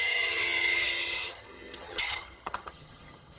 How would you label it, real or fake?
fake